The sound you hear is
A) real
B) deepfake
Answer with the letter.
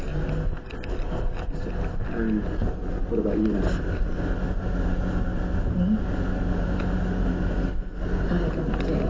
A